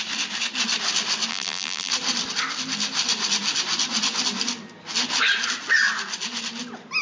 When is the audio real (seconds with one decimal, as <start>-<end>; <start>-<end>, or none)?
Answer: 0.0-1.3; 1.9-7.0